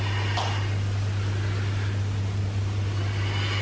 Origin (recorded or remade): recorded